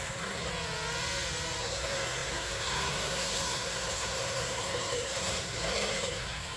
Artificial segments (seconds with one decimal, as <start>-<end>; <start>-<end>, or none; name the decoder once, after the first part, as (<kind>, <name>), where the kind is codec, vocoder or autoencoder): 0.0-0.5 (codec, SNAC); 1.6-6.6